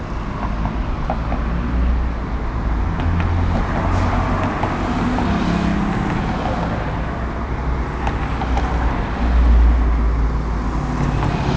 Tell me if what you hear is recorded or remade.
recorded